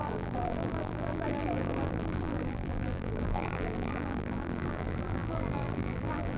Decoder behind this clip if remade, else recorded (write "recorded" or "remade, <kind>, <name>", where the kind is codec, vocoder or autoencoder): remade, vocoder, BigVGAN v2